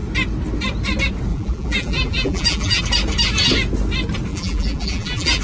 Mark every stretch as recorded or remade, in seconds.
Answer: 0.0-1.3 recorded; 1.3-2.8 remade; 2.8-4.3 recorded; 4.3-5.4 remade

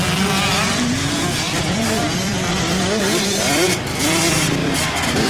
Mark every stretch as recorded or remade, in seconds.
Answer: 0.0-1.1 recorded; 1.1-5.3 remade